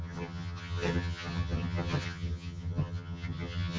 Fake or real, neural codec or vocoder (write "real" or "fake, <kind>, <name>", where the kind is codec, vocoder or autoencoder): fake, vocoder, HiFi-GAN